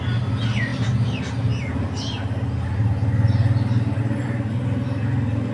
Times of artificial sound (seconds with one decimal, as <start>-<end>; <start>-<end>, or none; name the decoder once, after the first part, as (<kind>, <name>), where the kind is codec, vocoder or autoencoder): none